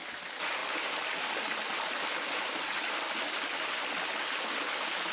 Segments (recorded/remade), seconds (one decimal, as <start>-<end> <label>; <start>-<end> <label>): 0.0-5.1 recorded

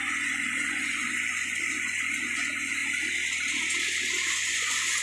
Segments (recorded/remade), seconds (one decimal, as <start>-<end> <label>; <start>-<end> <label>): 0.0-2.8 remade; 2.8-4.3 recorded; 4.3-5.0 remade

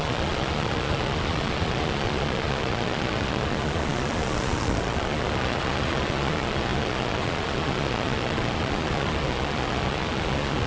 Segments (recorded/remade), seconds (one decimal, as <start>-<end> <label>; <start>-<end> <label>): 0.0-10.7 remade